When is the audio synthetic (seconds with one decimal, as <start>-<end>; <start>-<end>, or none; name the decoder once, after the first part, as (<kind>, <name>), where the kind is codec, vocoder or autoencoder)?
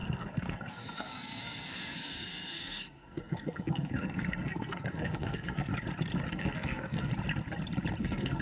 0.0-5.7 (codec, SNAC); 6.3-7.1; 8.0-8.4